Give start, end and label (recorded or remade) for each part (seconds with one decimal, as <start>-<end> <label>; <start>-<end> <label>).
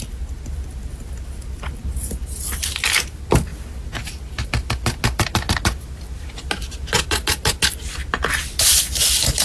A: 0.0-9.4 recorded